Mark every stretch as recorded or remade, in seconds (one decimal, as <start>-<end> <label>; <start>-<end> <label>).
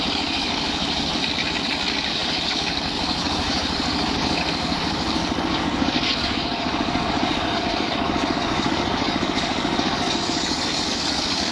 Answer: 0.0-11.5 remade